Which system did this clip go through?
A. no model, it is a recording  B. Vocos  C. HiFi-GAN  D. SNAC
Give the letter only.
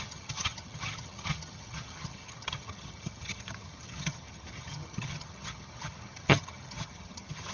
C